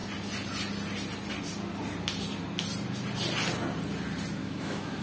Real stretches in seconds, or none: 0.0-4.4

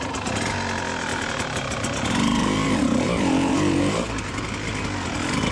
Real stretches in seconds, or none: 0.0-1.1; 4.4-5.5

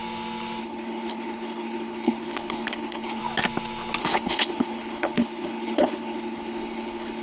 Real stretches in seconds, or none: 0.0-0.6; 3.2-4.0